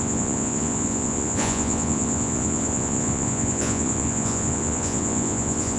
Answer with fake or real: fake